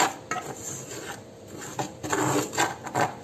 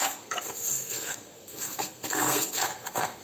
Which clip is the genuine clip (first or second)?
first